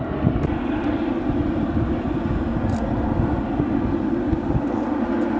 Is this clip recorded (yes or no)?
yes